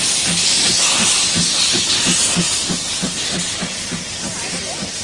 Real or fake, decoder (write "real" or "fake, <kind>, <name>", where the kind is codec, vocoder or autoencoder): real